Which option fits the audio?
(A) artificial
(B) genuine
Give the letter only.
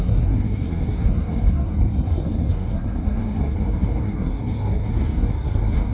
A